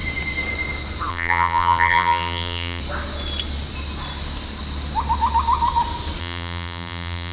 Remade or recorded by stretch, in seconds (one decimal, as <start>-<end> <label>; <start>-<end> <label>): 0.0-1.1 recorded; 1.1-2.8 remade; 2.8-6.2 recorded; 6.2-7.3 remade